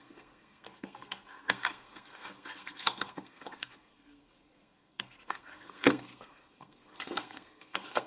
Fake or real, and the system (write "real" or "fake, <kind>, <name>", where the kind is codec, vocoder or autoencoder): fake, codec, SNAC